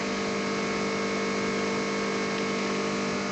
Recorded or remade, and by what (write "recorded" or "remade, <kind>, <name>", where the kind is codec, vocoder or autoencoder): recorded